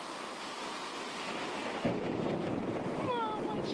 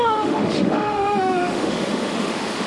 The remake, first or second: second